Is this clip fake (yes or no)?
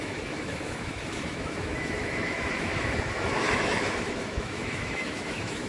yes